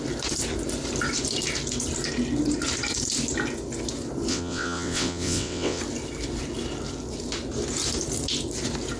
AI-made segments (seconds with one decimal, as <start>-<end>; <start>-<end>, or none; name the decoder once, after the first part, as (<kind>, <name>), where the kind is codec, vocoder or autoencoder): 4.3-5.8 (vocoder, WaveNeXt)